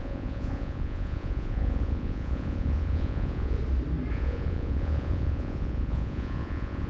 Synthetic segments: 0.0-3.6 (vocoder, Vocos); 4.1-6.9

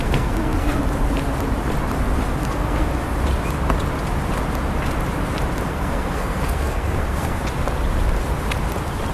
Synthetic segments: 0.0-0.8 (codec, SNAC); 2.4-2.9; 5.7-7.4

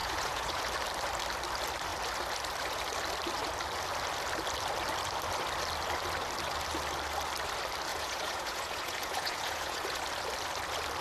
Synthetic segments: 0.0-0.6 (vocoder, Vocos); 7.9-10.0

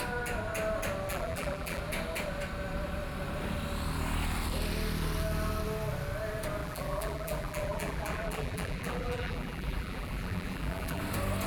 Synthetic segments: 1.1-1.8 (vocoder, BigVGAN v2); 6.6-11.0